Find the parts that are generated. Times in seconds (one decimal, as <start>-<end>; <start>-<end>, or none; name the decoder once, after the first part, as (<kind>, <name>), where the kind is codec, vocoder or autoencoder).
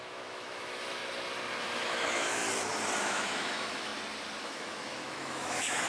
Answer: 0.0-1.0 (autoencoder, DAC-VAE); 1.6-2.4; 3.0-3.9; 4.4-5.9